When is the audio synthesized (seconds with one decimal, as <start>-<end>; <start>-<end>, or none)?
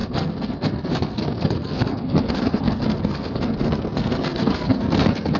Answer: 0.0-5.4